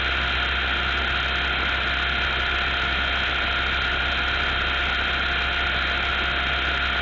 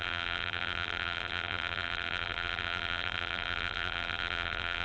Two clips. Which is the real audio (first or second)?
first